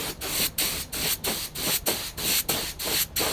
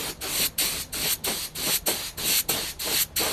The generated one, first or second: first